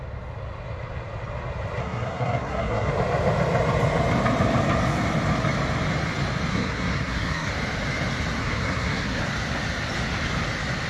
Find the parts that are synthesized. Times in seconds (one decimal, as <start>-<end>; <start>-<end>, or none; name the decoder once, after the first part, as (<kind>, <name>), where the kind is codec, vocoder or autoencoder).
1.8-2.9 (codec, SNAC); 6.5-7.5; 8.4-9.2